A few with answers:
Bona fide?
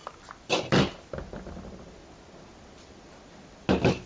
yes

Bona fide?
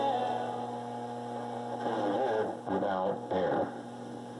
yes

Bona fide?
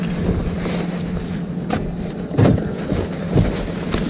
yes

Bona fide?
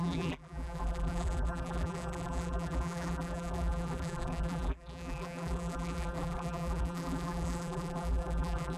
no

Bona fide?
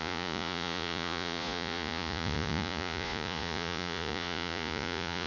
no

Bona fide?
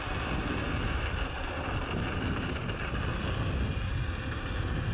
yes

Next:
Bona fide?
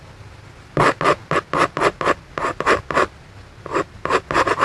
yes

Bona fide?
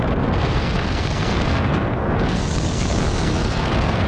no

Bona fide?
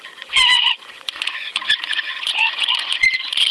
no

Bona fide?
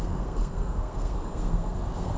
no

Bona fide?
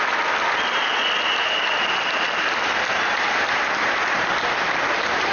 yes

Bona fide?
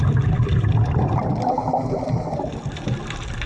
yes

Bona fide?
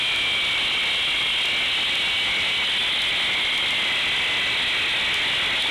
yes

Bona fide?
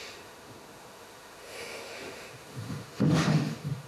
no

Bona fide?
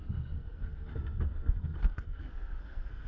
no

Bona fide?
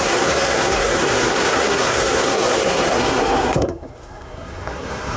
no